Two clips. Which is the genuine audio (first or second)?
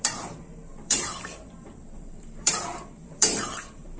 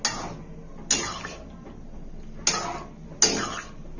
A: second